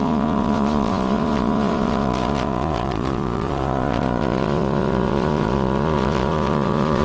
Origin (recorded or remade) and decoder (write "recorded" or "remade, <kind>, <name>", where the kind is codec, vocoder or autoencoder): remade, vocoder, Vocos